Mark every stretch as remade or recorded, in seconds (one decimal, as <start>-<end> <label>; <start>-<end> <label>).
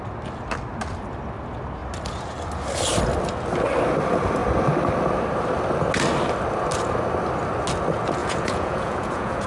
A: 0.0-8.2 recorded; 8.2-9.5 remade